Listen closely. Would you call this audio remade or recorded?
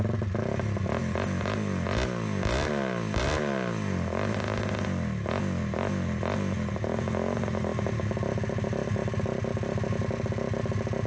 recorded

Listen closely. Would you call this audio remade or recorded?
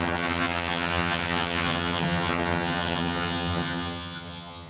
remade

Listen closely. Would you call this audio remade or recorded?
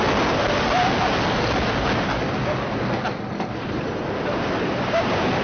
recorded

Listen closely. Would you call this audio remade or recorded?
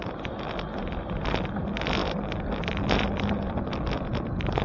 recorded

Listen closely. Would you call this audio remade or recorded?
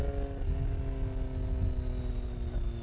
recorded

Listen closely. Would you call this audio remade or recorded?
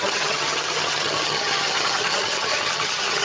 remade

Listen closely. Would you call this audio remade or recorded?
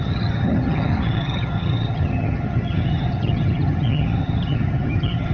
remade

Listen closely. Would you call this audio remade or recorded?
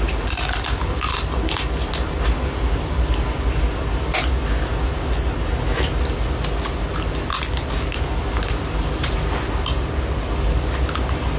recorded